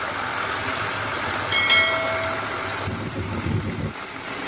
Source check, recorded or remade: recorded